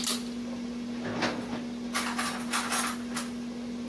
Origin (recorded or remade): recorded